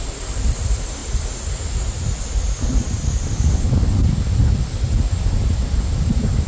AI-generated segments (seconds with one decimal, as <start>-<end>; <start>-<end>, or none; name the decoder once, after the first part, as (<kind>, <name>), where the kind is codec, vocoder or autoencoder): none